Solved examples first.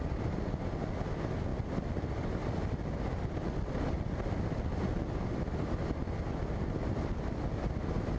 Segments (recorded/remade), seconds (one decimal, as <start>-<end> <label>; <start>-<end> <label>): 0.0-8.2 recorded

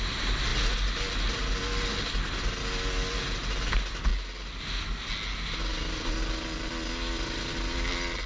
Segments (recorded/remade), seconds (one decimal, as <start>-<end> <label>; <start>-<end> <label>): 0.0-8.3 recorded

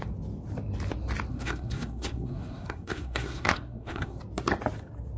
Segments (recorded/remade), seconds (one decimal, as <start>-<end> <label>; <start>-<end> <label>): 0.0-1.3 recorded; 1.3-4.2 remade; 4.2-5.2 recorded

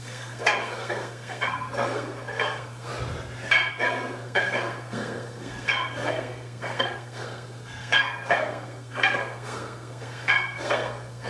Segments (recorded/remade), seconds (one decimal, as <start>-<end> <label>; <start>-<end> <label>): 0.0-2.9 remade; 2.9-3.7 recorded; 3.7-11.3 remade

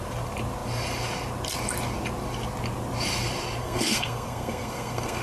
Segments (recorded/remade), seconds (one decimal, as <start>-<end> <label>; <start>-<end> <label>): 0.0-3.6 recorded; 3.6-5.2 remade

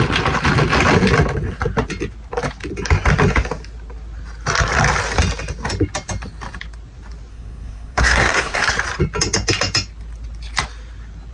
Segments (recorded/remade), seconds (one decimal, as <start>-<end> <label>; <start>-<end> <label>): 0.0-7.3 recorded; 7.3-8.7 remade; 8.7-11.3 recorded

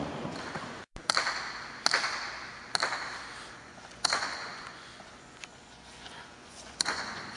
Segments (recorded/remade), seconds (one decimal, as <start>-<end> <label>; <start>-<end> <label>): 0.0-0.9 remade; 0.9-3.6 recorded; 3.6-7.4 remade

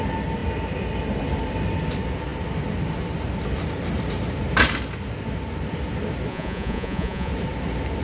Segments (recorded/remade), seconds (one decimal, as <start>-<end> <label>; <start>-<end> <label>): 0.0-6.3 recorded; 6.3-7.3 remade; 7.3-8.0 recorded